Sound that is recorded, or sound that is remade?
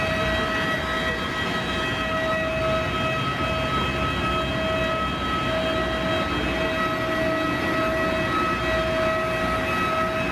recorded